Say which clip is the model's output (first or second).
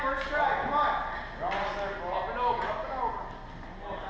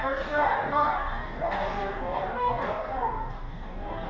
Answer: second